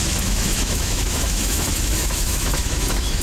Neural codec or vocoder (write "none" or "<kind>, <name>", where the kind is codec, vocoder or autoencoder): autoencoder, DAC-VAE